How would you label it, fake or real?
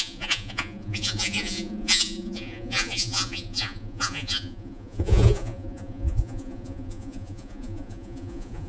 fake